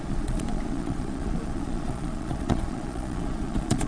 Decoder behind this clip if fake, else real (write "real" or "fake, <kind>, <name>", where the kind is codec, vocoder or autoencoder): fake, vocoder, Vocos